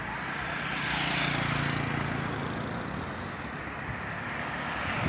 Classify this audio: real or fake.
real